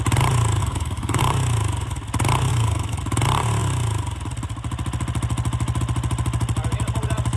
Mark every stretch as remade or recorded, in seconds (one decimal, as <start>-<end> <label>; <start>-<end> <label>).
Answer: 0.0-0.6 recorded; 0.6-1.2 remade; 1.2-2.5 recorded; 2.5-3.0 remade; 3.0-7.4 recorded